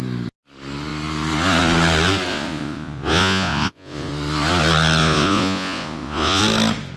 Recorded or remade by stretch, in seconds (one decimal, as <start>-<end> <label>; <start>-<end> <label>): 0.0-2.3 recorded; 2.3-4.1 remade; 4.1-5.0 recorded; 5.0-6.4 remade; 6.4-7.0 recorded